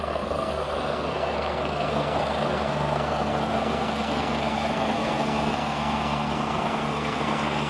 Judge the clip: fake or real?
fake